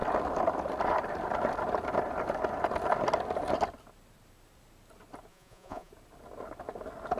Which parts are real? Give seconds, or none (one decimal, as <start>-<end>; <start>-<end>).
0.0-5.3; 5.9-7.2